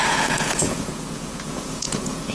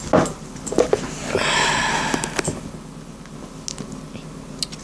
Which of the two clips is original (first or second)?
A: second